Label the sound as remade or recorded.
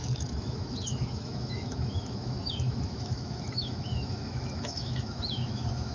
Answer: remade